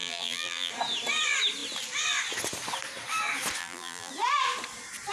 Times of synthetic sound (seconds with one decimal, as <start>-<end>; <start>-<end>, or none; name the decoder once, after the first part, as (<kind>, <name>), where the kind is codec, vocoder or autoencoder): 0.0-0.7 (vocoder, BigVGAN v2); 3.6-4.1